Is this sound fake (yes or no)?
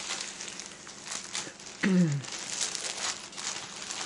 no